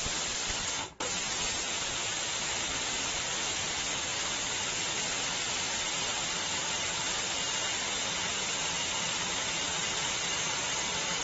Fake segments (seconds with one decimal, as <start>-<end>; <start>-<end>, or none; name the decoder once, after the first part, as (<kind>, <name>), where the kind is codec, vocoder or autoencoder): 8.3-11.2 (vocoder, BigVGAN v2)